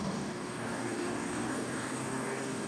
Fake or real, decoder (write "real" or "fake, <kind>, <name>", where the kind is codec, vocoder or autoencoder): fake, codec, DAC